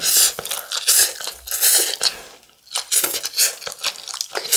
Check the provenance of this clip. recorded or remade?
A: recorded